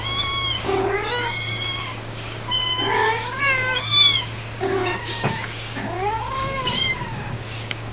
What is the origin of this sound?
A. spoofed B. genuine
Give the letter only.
A